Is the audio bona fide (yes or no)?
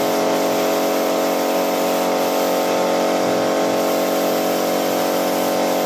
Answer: yes